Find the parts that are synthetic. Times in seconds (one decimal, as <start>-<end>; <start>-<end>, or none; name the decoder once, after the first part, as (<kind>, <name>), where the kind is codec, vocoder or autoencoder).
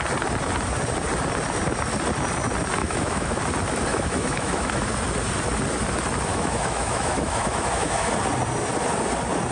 2.8-3.4 (autoencoder, DAC-VAE); 3.9-4.9; 6.3-8.1